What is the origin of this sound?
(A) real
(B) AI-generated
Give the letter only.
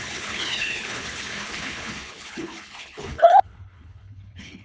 B